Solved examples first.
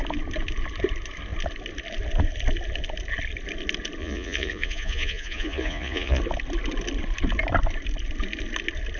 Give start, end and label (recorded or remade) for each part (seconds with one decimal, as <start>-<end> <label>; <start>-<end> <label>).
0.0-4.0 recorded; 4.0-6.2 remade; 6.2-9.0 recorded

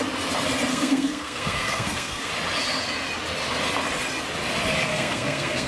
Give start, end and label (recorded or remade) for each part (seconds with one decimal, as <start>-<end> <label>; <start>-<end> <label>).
0.0-0.7 recorded; 0.7-2.3 remade; 2.3-4.9 recorded; 4.9-5.7 remade

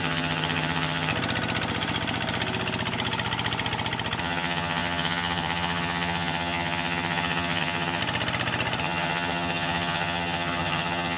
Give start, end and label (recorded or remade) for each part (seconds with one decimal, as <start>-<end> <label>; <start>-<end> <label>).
0.0-1.1 remade; 1.1-4.2 recorded; 4.2-8.0 remade; 8.0-8.8 recorded; 8.8-11.2 remade